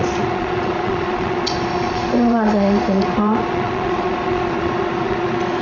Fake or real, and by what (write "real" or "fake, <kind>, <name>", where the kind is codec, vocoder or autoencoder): fake, vocoder, Vocos